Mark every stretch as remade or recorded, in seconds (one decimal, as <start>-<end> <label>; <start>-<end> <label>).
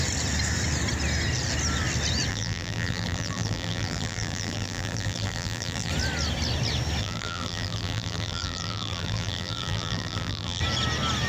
0.0-2.3 recorded; 2.3-5.9 remade; 5.9-7.0 recorded; 7.0-10.6 remade; 10.6-11.3 recorded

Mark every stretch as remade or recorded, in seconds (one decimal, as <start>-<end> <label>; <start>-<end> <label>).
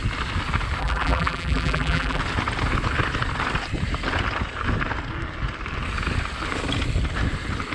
0.0-0.8 recorded; 0.8-2.2 remade; 2.2-7.7 recorded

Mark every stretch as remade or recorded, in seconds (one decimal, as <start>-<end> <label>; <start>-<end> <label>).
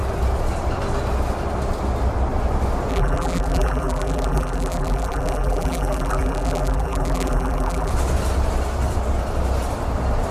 0.0-2.9 recorded; 2.9-7.9 remade; 7.9-10.3 recorded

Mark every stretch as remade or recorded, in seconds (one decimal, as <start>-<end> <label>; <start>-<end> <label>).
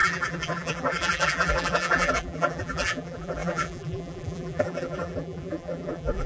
0.0-6.3 remade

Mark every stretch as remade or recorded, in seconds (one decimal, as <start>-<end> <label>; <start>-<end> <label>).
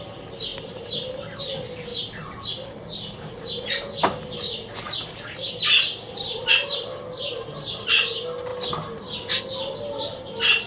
0.0-7.3 recorded; 7.3-7.9 remade; 7.9-10.7 recorded